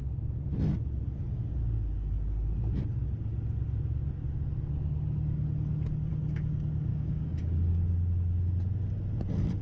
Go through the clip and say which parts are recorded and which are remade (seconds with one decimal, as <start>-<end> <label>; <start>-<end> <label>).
0.0-6.9 recorded; 6.9-7.9 remade; 7.9-9.6 recorded